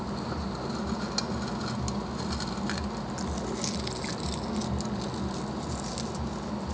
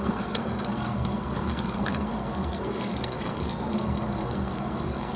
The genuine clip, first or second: first